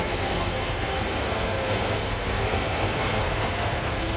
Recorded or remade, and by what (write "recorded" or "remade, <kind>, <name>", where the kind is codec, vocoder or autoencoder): remade, codec, SNAC